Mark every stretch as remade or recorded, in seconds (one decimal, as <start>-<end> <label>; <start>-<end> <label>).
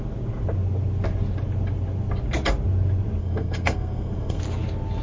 0.0-3.2 recorded; 3.2-4.4 remade; 4.4-5.0 recorded